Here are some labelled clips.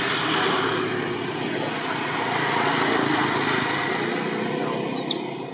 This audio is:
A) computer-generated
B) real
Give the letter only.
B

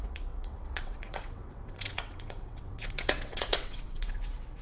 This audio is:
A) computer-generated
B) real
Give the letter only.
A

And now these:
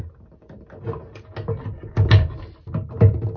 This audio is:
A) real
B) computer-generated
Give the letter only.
A